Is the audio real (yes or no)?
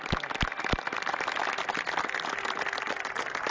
yes